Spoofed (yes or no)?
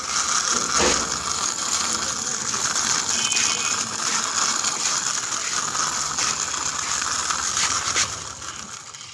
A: no